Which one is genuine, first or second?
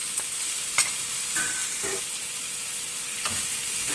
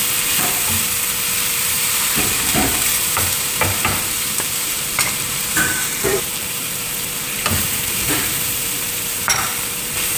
first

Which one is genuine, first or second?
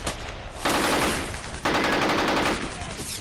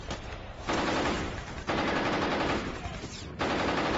first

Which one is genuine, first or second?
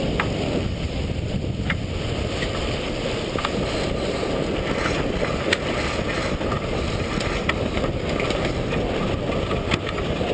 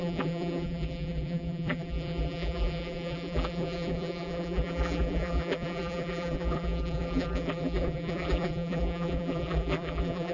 first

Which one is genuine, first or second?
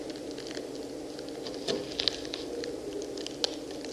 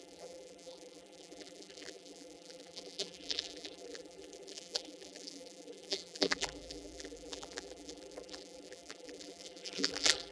first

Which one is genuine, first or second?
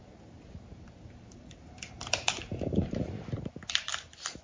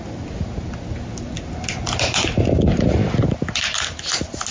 second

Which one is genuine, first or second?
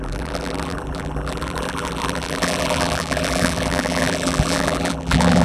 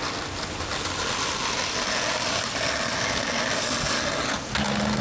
second